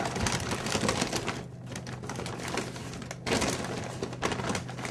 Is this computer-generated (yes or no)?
no